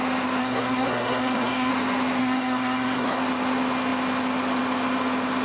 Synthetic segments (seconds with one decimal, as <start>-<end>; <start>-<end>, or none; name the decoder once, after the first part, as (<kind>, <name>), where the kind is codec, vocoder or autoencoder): 0.4-1.7 (codec, SNAC); 2.2-3.2